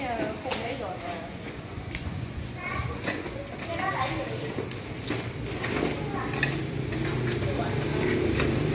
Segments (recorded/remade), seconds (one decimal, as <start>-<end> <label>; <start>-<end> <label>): 0.0-0.5 recorded; 0.5-3.4 remade; 3.4-8.7 recorded

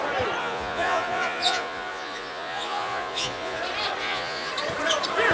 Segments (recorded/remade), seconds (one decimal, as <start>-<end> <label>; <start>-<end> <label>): 0.0-0.4 recorded; 0.4-3.6 remade; 3.6-4.0 recorded; 4.0-4.5 remade; 4.5-5.3 recorded